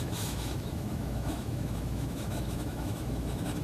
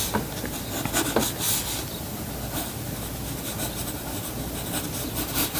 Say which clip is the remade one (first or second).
first